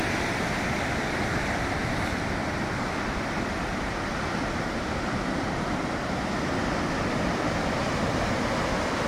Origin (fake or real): fake